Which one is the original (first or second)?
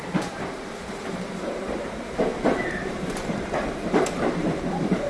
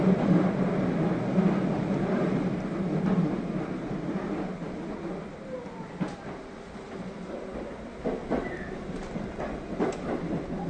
second